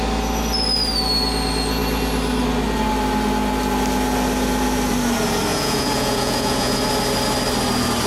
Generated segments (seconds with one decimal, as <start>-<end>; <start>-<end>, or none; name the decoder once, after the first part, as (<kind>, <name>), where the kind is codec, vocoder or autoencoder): 5.5-6.8 (vocoder, Vocos)

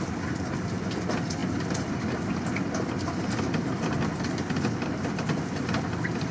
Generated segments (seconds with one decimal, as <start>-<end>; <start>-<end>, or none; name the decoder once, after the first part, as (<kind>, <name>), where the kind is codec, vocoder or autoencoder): none

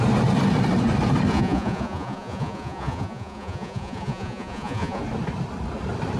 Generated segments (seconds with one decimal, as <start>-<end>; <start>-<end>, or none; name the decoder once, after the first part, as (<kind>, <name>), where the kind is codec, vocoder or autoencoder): 1.3-5.0 (vocoder, Vocos)

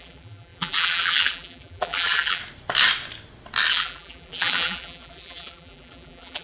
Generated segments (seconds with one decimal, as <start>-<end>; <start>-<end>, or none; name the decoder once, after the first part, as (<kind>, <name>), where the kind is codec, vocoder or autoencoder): 0.0-2.4 (vocoder, BigVGAN v2); 3.7-6.4

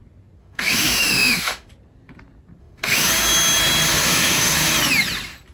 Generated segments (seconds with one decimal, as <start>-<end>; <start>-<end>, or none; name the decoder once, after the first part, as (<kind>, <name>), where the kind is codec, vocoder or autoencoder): 0.4-1.7 (autoencoder, DAC-VAE); 2.6-3.1; 3.9-4.7

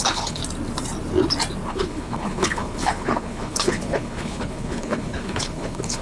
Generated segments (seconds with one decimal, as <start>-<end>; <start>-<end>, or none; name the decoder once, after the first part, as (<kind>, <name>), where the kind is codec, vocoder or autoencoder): 0.0-0.4 (codec, HILCodec); 1.7-6.0

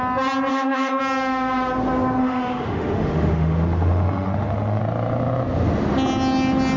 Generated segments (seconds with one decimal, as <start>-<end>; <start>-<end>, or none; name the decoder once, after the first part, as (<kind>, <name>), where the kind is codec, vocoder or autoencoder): 0.5-1.0 (autoencoder, DAC-VAE); 2.2-4.8

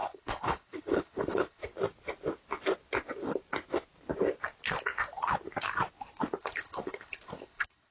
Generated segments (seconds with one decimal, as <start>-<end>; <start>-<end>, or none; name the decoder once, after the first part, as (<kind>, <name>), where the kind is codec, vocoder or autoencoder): 0.0-1.7 (codec, HILCodec); 6.4-7.9